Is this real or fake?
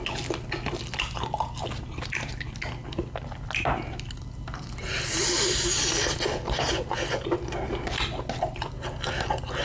real